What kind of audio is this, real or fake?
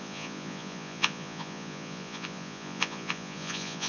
fake